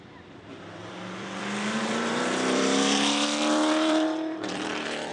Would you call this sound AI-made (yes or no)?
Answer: yes